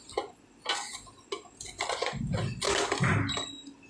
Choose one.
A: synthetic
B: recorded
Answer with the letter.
B